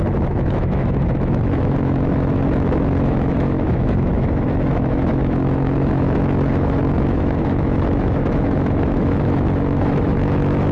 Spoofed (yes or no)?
yes